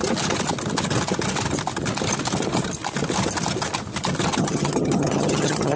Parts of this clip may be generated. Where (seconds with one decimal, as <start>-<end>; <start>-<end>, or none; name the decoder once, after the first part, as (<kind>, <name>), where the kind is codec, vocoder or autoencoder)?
4.4-5.8 (vocoder, HiFi-GAN)